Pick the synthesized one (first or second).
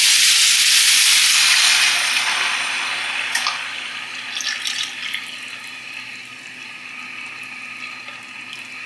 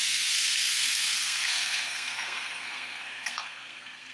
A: second